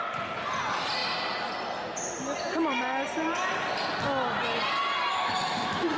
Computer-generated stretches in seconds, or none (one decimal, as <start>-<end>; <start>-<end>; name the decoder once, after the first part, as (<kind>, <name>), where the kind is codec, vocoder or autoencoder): 5.1-6.0 (autoencoder, DAC-VAE)